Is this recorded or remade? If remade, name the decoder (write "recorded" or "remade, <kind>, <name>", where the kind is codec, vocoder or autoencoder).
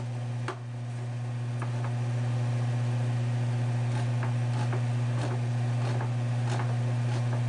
recorded